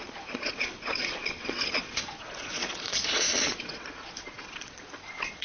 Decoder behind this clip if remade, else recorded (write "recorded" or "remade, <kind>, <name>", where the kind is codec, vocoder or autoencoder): remade, vocoder, Vocos